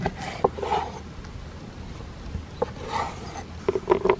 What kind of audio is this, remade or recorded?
remade